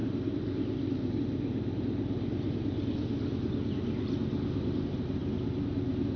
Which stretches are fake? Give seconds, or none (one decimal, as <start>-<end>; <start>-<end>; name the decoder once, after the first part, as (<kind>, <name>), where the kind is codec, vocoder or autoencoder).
none